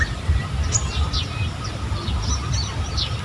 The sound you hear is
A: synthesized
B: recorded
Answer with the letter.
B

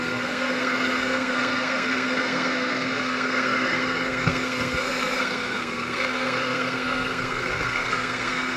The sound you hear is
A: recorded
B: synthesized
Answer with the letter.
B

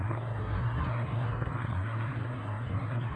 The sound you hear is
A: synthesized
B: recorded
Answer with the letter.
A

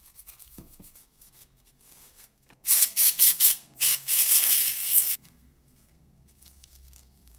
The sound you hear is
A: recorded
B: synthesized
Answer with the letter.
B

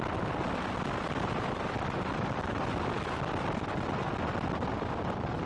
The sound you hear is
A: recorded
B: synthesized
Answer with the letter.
A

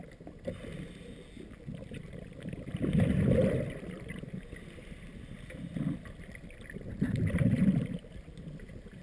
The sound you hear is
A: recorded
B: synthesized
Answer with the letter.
A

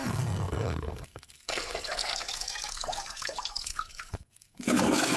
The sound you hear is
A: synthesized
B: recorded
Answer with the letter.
A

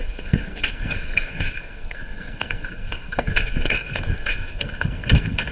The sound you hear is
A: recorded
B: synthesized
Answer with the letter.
B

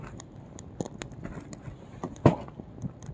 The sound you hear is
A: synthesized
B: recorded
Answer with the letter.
B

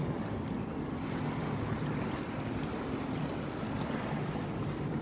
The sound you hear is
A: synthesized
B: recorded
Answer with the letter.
B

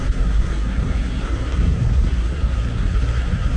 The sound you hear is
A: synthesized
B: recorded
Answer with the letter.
A